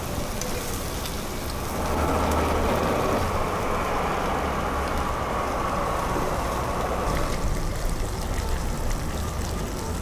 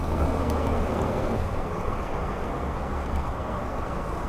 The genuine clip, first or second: first